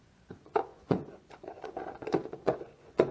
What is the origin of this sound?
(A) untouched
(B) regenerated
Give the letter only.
B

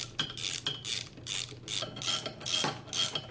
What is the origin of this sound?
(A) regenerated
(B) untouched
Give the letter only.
B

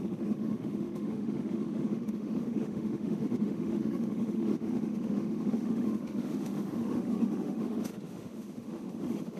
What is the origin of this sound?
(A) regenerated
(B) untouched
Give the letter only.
A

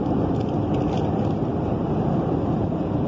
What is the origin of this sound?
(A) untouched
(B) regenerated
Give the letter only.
A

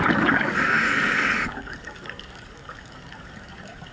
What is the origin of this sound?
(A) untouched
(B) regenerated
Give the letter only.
B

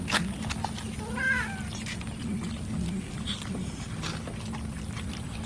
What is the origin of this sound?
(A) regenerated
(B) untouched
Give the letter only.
B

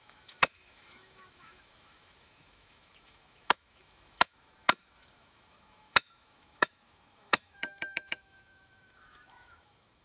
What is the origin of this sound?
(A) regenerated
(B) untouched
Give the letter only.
A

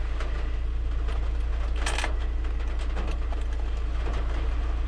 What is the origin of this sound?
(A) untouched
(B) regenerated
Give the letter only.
A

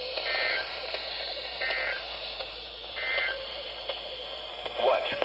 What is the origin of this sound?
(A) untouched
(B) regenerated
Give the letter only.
B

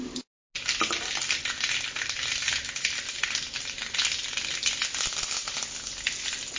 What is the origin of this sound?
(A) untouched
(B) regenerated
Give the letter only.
A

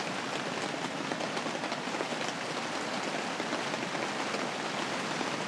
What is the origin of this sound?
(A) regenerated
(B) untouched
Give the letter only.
B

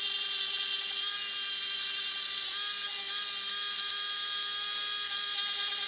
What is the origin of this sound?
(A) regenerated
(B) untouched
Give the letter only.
B